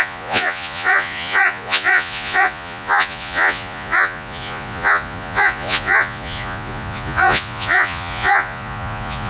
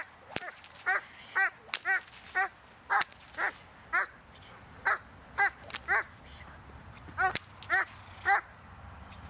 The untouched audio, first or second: second